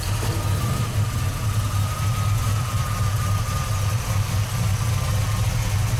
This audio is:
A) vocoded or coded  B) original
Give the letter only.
B